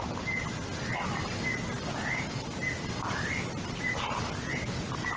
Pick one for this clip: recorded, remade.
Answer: recorded